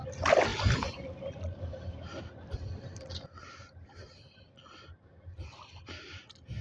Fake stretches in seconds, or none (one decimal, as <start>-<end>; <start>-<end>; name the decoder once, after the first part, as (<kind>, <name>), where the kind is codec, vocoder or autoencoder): none